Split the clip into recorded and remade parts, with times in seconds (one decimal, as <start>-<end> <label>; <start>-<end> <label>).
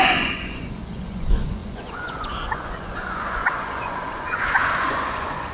0.0-5.5 remade